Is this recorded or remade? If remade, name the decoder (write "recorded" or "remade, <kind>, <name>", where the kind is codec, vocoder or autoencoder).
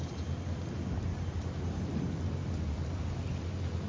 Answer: recorded